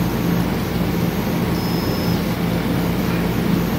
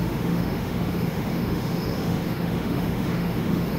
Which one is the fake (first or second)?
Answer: second